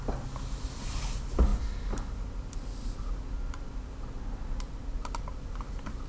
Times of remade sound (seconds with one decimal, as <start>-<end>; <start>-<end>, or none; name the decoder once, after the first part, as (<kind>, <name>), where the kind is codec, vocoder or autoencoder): none